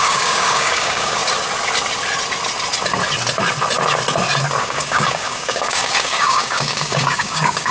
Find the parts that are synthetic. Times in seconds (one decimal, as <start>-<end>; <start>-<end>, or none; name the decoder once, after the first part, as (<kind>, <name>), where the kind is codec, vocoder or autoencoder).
0.0-1.2 (codec, DAC); 4.6-7.7